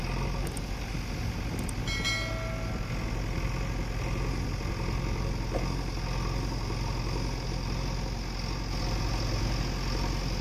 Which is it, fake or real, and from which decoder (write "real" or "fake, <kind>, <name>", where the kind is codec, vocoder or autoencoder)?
real